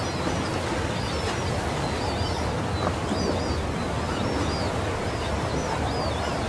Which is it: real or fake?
real